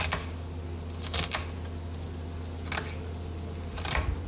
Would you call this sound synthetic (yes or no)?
no